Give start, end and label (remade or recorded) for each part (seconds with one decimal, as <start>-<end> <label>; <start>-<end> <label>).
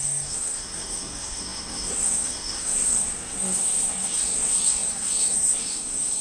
0.0-6.2 remade